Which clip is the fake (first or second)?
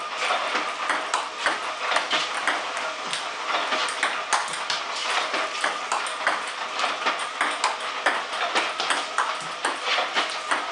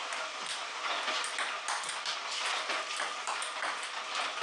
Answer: second